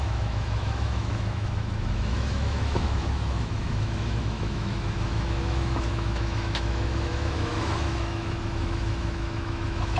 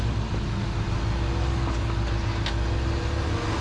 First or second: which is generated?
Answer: first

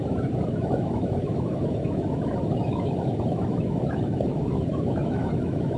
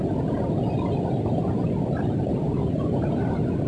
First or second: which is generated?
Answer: first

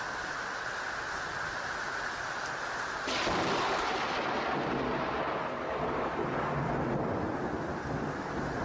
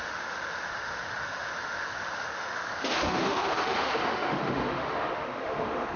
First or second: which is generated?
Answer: second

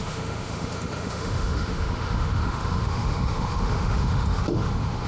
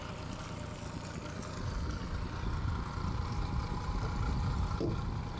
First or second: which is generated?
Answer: first